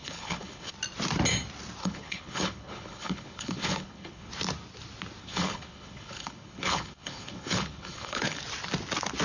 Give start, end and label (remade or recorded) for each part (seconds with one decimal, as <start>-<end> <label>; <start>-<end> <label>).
0.0-0.7 remade; 0.7-1.8 recorded; 1.8-4.3 remade; 4.3-5.2 recorded; 5.2-8.4 remade; 8.4-9.2 recorded